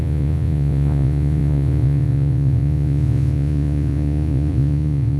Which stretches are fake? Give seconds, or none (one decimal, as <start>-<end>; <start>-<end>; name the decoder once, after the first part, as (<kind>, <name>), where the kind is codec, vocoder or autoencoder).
0.0-5.2 (vocoder, Vocos)